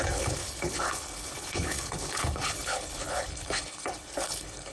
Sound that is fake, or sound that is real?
fake